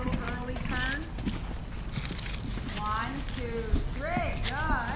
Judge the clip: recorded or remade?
recorded